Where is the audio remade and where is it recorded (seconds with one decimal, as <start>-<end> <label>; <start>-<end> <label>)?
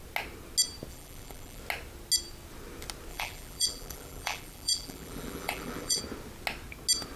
0.0-0.9 recorded; 0.9-1.6 remade; 1.6-3.1 recorded; 3.1-6.0 remade; 6.0-7.2 recorded